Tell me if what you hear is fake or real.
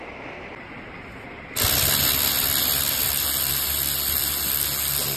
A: real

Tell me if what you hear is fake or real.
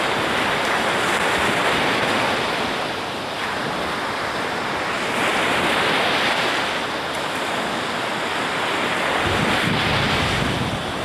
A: real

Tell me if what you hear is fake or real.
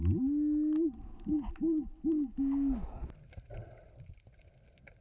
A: real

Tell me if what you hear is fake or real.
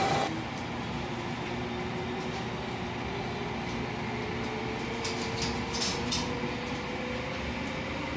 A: real